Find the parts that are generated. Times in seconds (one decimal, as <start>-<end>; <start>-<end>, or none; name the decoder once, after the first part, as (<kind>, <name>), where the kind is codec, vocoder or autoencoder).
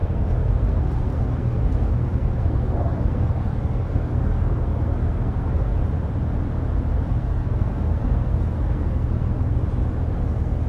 0.0-5.8 (codec, SNAC); 6.9-9.6; 10.1-10.7